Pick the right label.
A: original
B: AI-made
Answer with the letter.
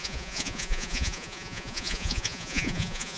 B